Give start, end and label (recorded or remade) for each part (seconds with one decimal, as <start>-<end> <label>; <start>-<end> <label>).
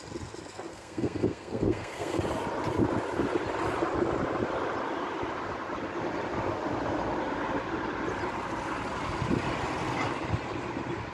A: 0.0-0.7 recorded; 0.7-2.2 remade; 2.2-11.1 recorded